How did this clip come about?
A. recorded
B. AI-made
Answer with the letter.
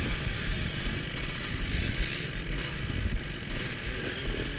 A